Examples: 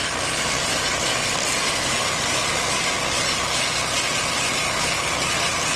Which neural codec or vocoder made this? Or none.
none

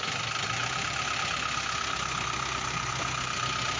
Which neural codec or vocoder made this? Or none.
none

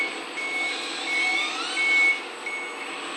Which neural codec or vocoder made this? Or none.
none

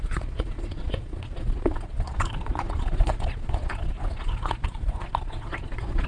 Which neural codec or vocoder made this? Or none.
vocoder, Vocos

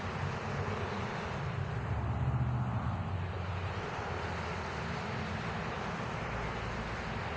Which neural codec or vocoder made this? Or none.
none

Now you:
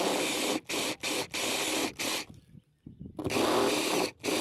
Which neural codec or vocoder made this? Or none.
none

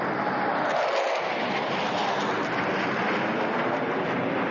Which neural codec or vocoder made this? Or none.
none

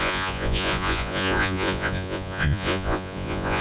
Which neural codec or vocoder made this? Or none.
vocoder, Vocos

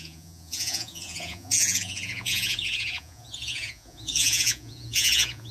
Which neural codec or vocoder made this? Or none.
vocoder, Vocos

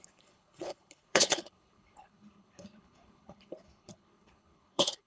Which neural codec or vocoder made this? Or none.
codec, HILCodec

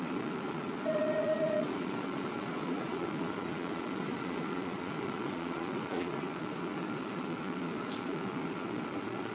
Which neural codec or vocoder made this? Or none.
vocoder, Vocos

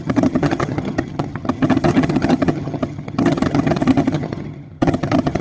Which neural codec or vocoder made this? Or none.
vocoder, HiFi-GAN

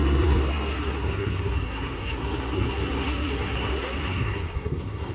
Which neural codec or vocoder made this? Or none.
codec, SNAC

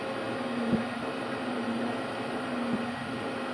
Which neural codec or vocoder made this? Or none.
none